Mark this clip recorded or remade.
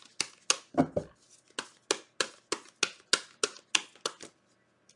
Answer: recorded